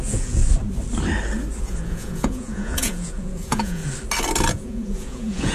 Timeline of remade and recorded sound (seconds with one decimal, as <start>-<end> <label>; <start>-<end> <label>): 0.0-0.4 remade; 0.4-1.6 recorded; 1.6-3.8 remade; 3.8-4.5 recorded; 4.5-5.5 remade